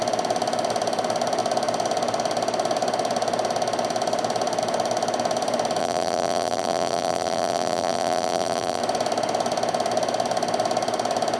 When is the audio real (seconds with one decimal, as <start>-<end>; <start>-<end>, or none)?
0.0-5.8; 8.8-11.4